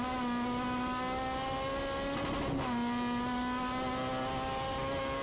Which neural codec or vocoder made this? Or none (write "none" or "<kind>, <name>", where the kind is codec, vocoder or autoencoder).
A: none